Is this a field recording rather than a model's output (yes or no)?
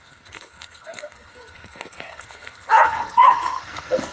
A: no